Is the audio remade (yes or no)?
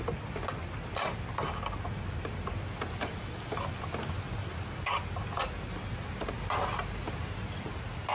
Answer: no